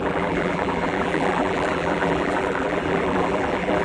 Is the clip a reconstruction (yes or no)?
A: yes